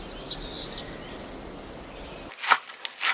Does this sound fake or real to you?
real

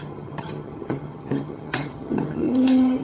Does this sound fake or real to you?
fake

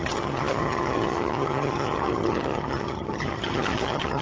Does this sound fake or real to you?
fake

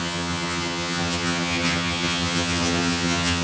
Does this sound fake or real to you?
fake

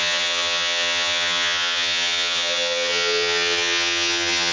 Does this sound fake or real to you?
fake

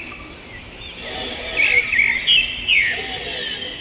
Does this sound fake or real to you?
real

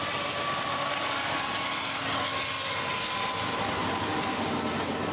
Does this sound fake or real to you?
real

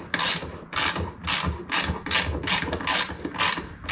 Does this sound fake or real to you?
real